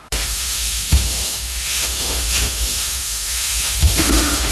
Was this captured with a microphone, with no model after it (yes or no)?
no